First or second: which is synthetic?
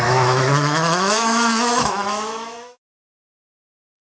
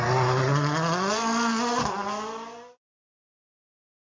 first